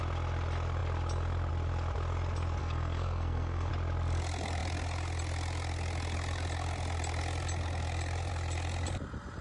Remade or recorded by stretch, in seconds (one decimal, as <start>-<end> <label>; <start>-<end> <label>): 0.0-2.6 recorded; 2.6-3.7 remade; 3.7-9.4 recorded